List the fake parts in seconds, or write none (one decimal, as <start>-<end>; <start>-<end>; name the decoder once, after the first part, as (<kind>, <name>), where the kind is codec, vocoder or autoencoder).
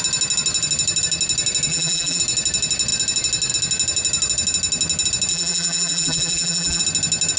1.7-2.2 (vocoder, BigVGAN v2); 5.3-6.8